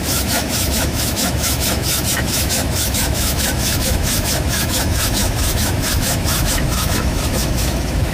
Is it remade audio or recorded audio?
remade